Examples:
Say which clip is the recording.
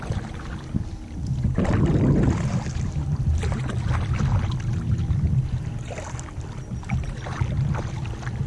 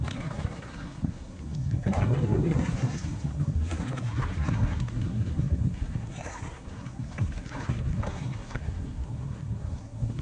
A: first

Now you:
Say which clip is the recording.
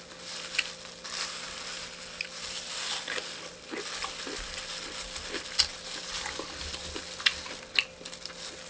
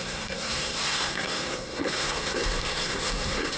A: first